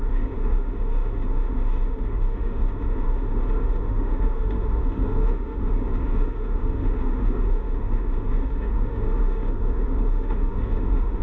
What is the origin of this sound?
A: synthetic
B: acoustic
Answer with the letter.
A